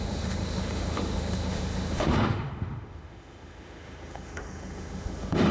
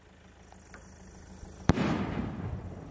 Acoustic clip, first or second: second